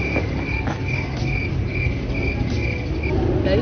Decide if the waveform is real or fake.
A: real